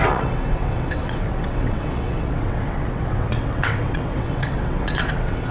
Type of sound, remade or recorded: remade